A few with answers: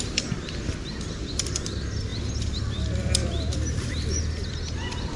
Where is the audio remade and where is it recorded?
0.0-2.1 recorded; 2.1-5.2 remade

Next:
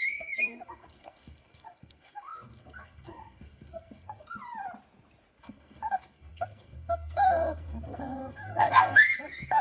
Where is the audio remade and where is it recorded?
0.0-4.4 remade; 4.4-5.4 recorded; 5.4-9.6 remade

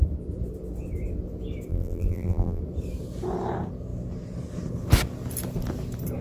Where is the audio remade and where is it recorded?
0.0-1.7 recorded; 1.7-2.6 remade; 2.6-6.2 recorded